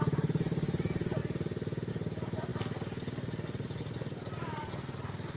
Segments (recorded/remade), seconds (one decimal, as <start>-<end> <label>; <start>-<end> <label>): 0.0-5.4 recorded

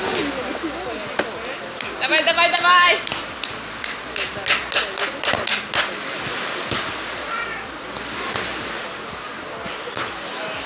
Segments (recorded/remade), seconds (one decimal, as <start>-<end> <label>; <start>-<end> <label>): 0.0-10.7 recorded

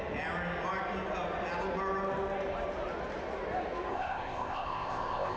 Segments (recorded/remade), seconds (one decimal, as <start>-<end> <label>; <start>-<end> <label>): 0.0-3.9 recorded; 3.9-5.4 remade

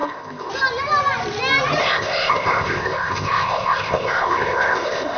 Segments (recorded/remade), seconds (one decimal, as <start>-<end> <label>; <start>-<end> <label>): 0.0-0.5 remade; 0.5-1.8 recorded; 1.8-5.2 remade

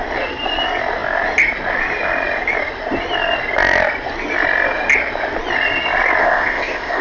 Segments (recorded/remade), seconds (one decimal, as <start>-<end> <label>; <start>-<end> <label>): 0.0-6.2 recorded; 6.2-7.0 remade

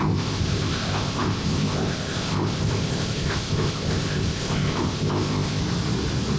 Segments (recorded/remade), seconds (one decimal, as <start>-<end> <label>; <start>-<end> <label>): 0.0-5.6 remade; 5.6-6.4 recorded

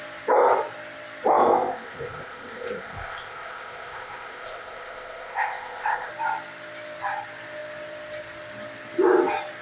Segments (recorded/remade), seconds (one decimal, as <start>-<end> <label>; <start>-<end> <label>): 0.0-1.3 recorded; 1.3-6.1 remade; 6.1-9.6 recorded

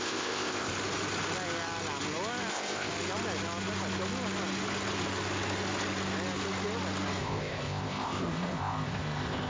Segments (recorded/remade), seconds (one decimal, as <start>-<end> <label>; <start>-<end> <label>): 0.0-0.7 remade; 0.7-2.5 recorded; 2.5-2.9 remade; 2.9-7.2 recorded; 7.2-9.5 remade